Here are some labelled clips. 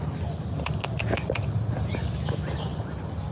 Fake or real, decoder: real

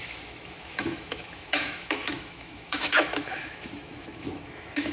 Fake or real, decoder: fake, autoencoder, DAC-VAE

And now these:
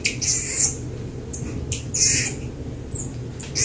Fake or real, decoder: real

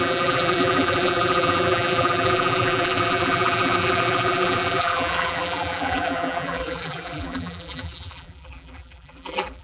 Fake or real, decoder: fake, vocoder, BigVGAN v2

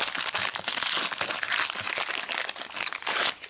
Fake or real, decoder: real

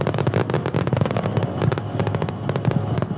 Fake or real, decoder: real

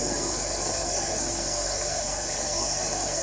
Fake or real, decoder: fake, codec, SNAC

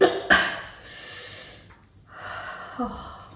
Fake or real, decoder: real